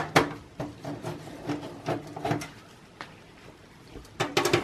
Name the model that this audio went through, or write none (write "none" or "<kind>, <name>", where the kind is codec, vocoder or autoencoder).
none